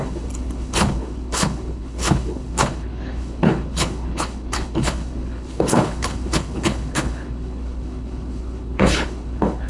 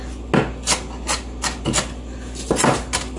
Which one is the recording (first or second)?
second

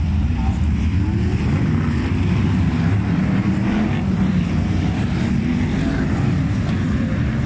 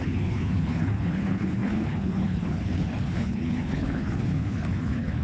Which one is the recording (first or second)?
first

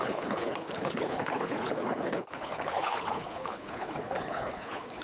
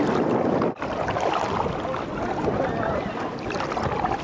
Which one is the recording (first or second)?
second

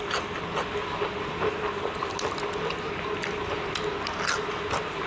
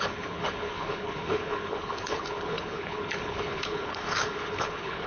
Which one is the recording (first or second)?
first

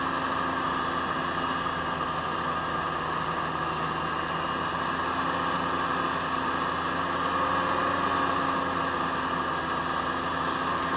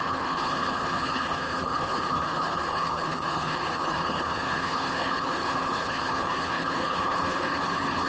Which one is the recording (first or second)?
first